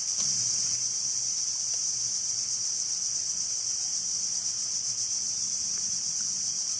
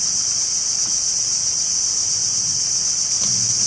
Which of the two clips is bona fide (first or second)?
second